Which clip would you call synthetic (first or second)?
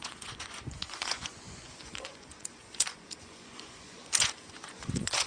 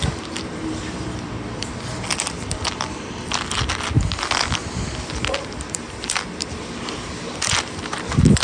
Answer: first